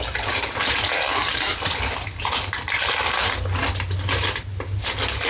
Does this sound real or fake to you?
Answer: real